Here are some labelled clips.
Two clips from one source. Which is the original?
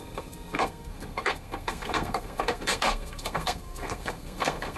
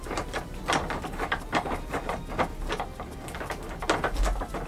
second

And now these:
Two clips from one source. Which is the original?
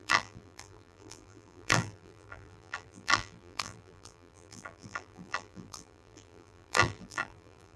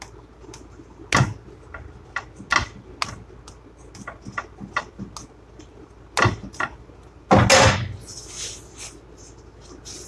second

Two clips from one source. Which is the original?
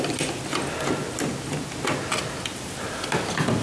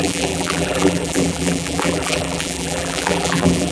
first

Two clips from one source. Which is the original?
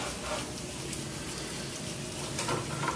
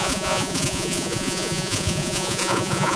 first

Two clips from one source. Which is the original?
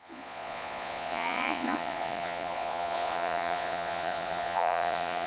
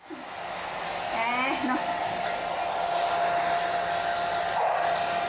second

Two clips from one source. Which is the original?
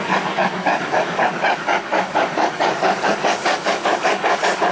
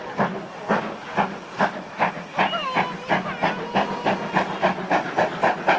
second